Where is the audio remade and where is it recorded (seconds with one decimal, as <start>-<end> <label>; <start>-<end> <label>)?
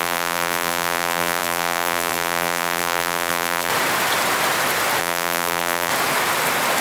0.0-3.7 remade; 3.7-5.0 recorded; 5.0-5.9 remade; 5.9-6.8 recorded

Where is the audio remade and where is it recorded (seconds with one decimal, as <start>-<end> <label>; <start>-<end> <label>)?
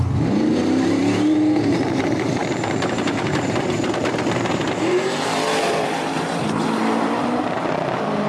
0.0-8.3 remade